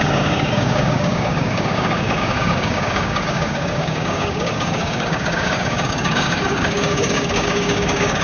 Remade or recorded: remade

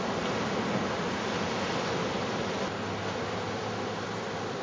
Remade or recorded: recorded